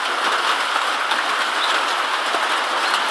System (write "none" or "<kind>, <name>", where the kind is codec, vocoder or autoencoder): none